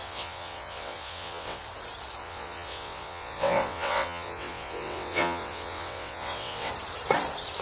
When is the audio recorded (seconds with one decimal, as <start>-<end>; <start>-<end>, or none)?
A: 1.6-2.2; 6.7-7.6